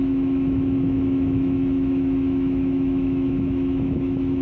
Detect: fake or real fake